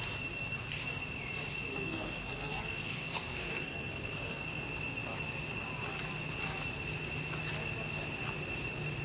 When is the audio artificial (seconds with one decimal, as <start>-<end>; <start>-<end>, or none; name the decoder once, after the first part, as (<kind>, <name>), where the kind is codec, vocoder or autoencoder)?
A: 1.7-4.6 (codec, SNAC)